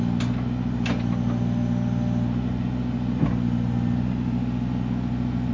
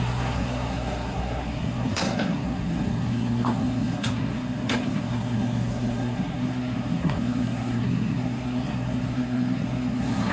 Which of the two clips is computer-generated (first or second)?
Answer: second